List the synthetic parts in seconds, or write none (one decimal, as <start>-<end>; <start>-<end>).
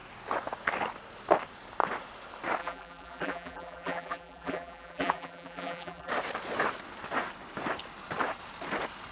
2.6-6.1